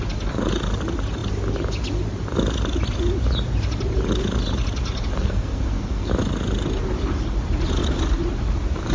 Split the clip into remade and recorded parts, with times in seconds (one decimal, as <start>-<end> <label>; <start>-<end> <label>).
0.0-5.1 recorded; 5.1-6.1 remade; 6.1-8.9 recorded